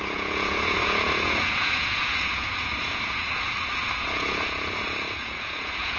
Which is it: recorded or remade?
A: remade